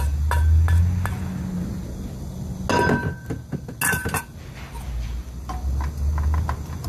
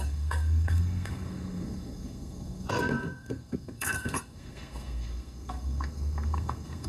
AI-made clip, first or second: second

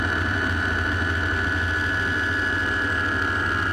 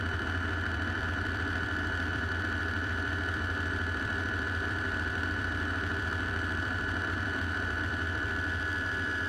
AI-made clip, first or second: second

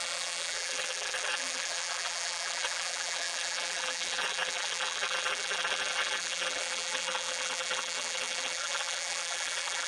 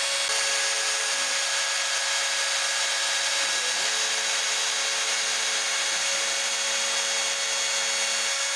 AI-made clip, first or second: first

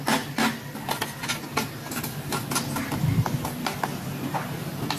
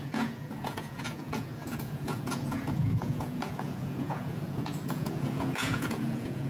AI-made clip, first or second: second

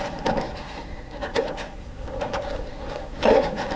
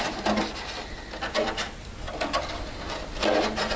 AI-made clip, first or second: first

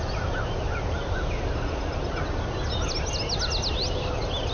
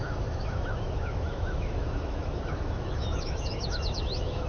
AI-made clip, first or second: second